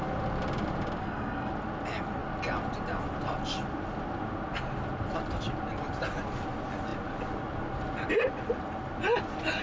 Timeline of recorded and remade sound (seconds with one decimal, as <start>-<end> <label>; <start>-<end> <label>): 0.0-1.0 recorded; 1.0-1.5 remade; 1.5-9.6 recorded